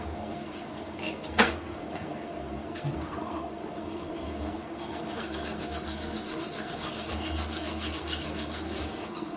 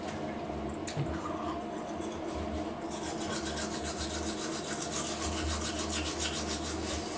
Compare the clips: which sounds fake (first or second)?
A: first